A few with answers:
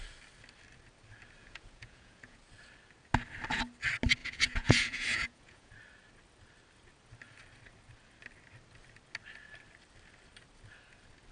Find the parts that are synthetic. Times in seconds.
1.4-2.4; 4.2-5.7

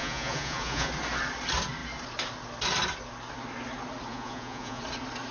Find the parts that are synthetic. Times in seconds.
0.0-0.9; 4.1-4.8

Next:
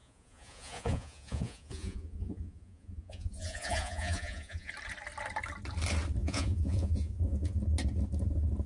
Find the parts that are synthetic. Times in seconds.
0.0-4.7; 6.2-7.6

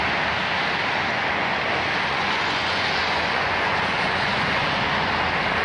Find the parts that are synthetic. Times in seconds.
1.1-1.6; 2.1-5.1

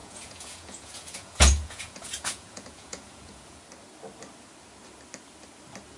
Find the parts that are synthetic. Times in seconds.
0.0-3.6

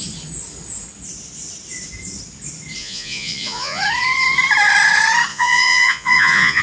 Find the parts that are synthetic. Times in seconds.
2.8-3.8; 5.3-6.6

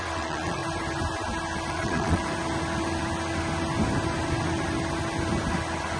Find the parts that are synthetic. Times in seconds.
0.0-0.6; 1.7-2.2

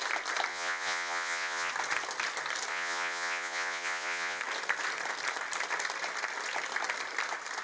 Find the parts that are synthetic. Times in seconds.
0.5-1.7; 2.7-4.4